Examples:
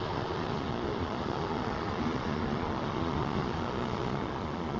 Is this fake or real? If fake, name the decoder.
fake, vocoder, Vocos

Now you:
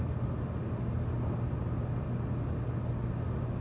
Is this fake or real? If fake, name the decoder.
real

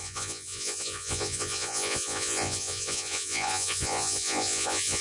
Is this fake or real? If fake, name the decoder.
fake, vocoder, Vocos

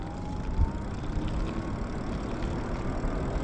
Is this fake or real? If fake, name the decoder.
real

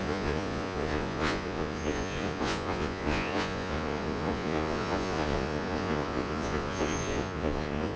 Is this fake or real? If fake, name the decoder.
fake, vocoder, Vocos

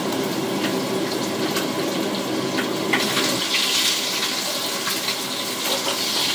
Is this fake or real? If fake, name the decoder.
real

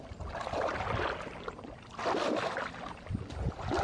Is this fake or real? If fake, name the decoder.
real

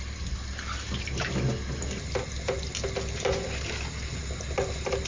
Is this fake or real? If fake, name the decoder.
real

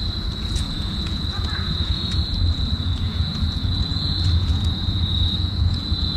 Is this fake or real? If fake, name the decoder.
fake, vocoder, Vocos